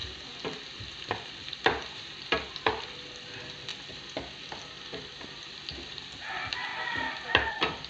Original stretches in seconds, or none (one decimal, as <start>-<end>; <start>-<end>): 0.0-1.0; 3.7-4.4; 6.7-7.5